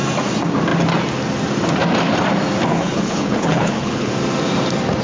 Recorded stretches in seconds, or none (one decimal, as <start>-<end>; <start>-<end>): 0.0-2.7; 4.1-5.0